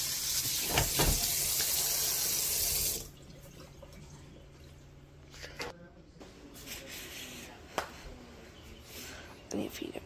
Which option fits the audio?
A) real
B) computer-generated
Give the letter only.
A